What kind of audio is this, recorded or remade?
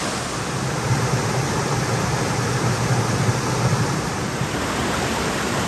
recorded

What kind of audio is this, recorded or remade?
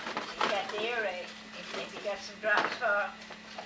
recorded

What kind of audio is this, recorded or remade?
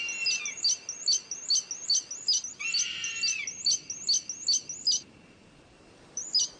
recorded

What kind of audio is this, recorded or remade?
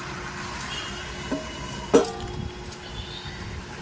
recorded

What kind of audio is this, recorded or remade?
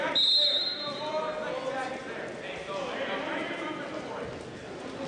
recorded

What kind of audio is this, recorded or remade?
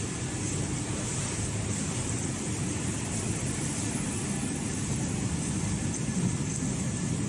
recorded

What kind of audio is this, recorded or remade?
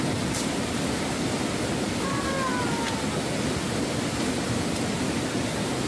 recorded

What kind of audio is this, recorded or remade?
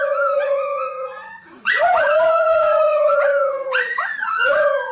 remade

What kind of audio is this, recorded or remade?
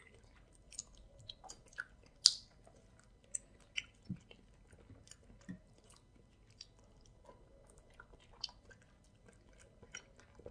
recorded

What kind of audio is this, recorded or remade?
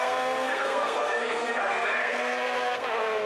remade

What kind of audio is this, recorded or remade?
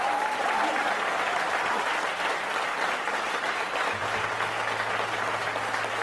recorded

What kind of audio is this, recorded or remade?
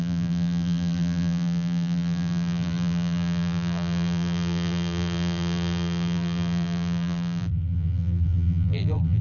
remade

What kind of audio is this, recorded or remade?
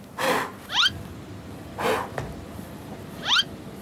recorded